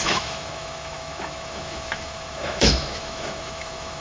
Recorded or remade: remade